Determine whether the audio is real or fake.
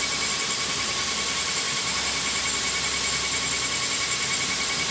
real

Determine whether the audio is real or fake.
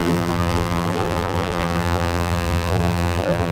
fake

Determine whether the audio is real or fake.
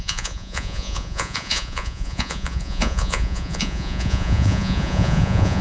fake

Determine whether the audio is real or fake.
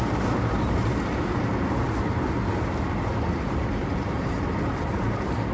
real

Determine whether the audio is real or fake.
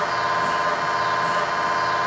real